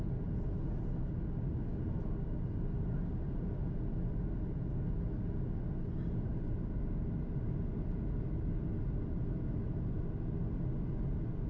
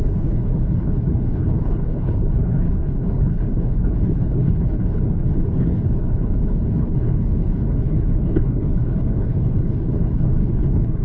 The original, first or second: first